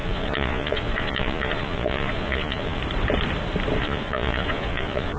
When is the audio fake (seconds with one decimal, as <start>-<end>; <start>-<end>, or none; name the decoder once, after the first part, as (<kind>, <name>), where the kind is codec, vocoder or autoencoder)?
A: 0.0-2.8 (vocoder, Vocos); 3.8-5.2